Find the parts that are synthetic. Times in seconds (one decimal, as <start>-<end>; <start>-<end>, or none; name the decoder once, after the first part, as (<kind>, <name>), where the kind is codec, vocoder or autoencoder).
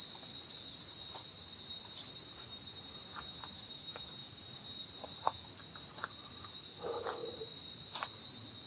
none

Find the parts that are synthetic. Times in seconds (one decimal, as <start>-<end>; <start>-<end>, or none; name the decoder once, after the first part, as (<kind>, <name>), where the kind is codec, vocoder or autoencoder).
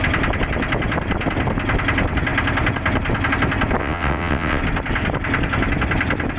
3.8-4.6 (vocoder, WaveNeXt)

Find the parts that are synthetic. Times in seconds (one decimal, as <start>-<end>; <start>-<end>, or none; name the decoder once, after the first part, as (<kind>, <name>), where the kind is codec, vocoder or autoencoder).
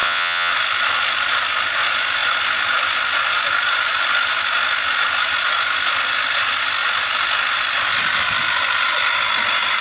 0.0-0.5 (vocoder, WaveNeXt)